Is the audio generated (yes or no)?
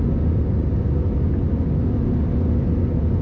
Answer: no